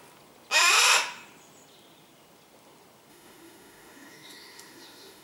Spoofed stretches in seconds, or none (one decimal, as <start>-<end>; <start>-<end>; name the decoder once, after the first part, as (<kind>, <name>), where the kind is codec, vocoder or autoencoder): 3.1-5.2 (autoencoder, DAC-VAE)